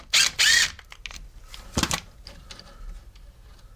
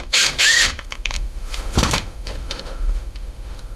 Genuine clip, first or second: first